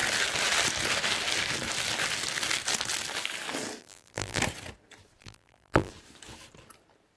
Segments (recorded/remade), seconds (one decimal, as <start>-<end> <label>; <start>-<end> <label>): 0.0-3.8 recorded; 3.8-4.4 remade; 4.4-5.2 recorded; 5.2-5.9 remade; 5.9-7.2 recorded